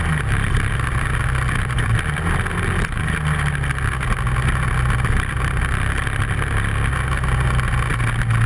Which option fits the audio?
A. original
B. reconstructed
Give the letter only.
A